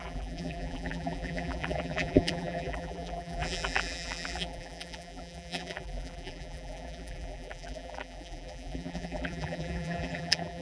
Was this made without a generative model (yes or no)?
no